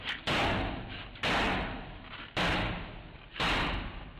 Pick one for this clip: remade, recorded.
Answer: recorded